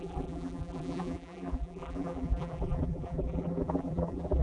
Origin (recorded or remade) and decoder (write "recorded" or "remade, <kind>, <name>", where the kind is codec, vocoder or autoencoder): remade, vocoder, BigVGAN v2